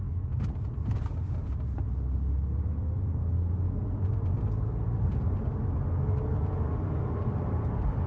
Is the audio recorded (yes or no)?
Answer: yes